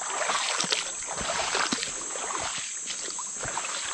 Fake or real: real